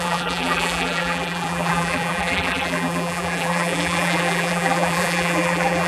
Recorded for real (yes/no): no